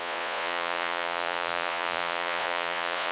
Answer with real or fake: fake